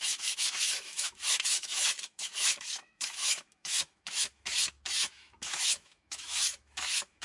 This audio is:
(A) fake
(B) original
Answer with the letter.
A